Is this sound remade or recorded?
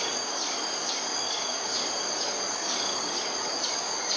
remade